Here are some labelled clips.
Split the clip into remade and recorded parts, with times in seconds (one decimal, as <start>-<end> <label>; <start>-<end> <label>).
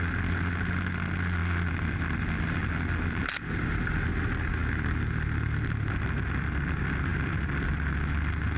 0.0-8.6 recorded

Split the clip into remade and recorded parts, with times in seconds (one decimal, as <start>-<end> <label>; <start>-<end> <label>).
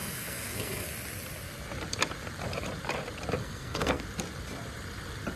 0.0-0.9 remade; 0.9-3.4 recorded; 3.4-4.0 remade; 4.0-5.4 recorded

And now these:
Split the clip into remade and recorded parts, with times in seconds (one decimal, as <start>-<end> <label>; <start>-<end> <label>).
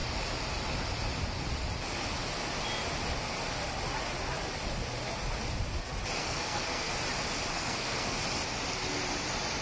0.0-6.2 recorded; 6.2-6.9 remade; 6.9-7.5 recorded; 7.5-8.2 remade; 8.2-9.6 recorded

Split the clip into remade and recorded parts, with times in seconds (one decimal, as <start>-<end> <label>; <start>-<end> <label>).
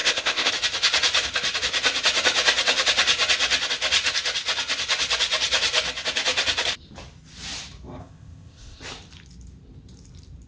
0.0-0.5 remade; 0.5-8.0 recorded; 8.0-8.8 remade; 8.8-10.5 recorded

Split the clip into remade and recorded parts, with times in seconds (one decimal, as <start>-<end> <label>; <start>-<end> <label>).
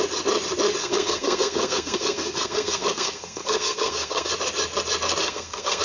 0.0-0.8 recorded; 0.8-4.3 remade; 4.3-5.2 recorded; 5.2-5.8 remade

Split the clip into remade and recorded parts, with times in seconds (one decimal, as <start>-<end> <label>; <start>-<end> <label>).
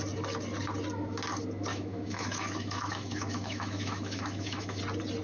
0.0-1.7 recorded; 1.7-4.8 remade; 4.8-5.2 recorded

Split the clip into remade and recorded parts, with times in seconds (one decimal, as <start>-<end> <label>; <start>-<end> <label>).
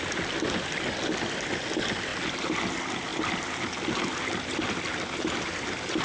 0.0-6.0 recorded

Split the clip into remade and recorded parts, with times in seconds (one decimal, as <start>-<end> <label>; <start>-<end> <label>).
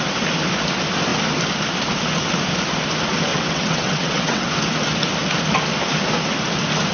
0.0-3.3 recorded; 3.3-4.5 remade; 4.5-6.9 recorded